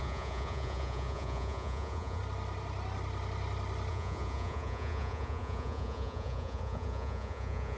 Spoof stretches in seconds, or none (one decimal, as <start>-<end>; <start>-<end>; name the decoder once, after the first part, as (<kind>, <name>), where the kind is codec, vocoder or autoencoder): 0.0-2.2 (vocoder, Vocos); 3.9-7.8